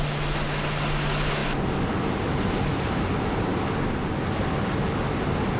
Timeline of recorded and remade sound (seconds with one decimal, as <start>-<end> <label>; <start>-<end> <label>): 0.0-1.4 recorded; 1.4-3.7 remade; 3.7-5.6 recorded